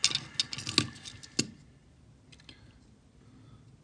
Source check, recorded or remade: recorded